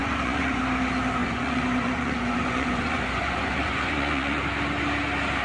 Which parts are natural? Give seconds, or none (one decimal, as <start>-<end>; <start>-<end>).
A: 0.6-1.2; 4.4-5.4